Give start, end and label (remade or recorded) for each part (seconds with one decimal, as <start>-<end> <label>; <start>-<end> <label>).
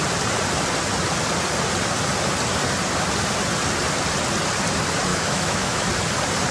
0.0-5.1 recorded; 5.1-5.9 remade; 5.9-6.5 recorded